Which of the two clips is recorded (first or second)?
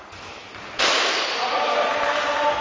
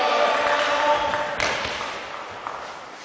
second